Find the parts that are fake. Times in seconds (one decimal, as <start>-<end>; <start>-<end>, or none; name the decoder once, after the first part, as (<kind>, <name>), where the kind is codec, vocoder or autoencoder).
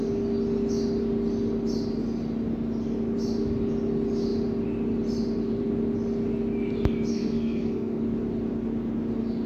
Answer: 7.1-8.0 (codec, SNAC)